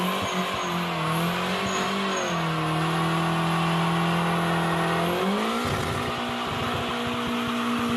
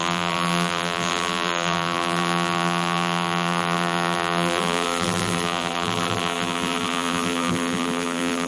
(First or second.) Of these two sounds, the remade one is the second